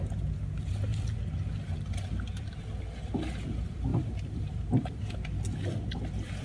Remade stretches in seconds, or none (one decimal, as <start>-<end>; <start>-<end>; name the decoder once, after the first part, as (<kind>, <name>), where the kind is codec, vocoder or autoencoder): 3.9-5.1 (vocoder, BigVGAN v2)